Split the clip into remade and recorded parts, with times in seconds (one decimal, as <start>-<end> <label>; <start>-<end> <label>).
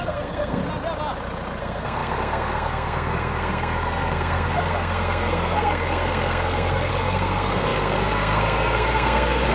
0.0-0.6 remade; 0.6-1.6 recorded; 1.6-9.5 remade